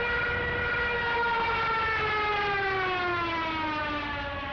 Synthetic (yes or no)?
no